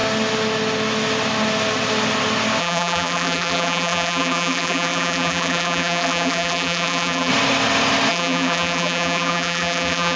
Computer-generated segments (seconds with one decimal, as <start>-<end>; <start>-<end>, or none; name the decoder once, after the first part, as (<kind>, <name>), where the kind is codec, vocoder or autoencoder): 2.6-7.3 (vocoder, BigVGAN v2); 8.1-10.2